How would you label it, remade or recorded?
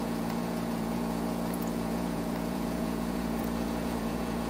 remade